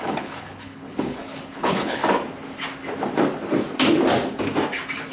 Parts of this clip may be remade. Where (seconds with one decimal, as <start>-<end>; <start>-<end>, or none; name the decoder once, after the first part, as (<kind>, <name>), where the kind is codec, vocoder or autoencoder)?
0.0-2.0 (codec, HILCodec)